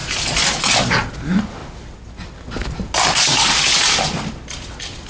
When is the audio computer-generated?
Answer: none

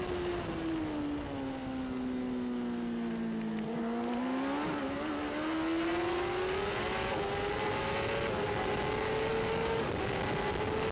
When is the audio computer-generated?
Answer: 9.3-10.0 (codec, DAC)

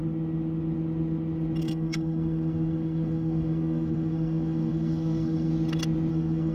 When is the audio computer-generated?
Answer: 1.6-5.5 (codec, SNAC); 6.1-6.5